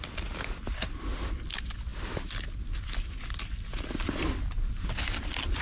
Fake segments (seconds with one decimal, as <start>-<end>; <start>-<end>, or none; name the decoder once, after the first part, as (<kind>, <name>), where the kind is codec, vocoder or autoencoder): none